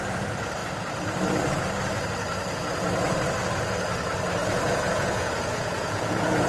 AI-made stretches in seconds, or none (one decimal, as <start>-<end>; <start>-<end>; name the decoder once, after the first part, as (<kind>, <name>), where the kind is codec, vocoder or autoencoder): 4.4-6.5 (vocoder, Vocos)